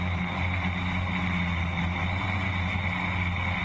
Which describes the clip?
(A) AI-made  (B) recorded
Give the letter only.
B